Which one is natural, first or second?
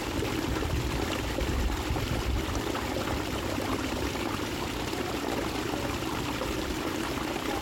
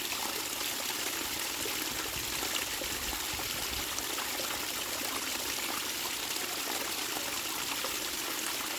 second